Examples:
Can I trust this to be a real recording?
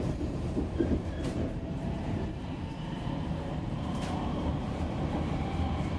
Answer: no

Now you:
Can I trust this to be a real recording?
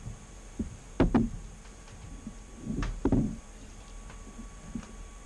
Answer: yes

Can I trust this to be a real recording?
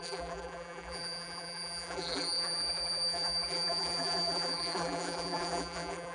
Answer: no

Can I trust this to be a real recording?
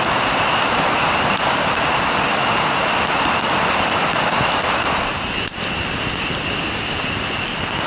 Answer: yes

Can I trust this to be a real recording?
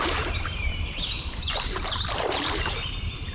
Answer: no